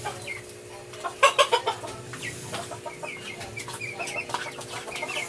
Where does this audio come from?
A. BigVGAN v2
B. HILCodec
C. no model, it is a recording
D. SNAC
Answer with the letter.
A